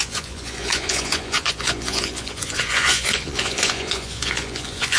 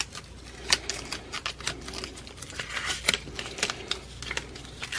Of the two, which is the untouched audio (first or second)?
second